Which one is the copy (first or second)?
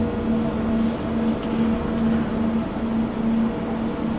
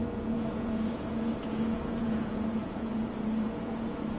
second